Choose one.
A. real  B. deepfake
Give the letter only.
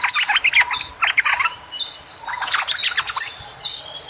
A